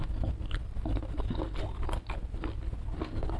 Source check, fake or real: real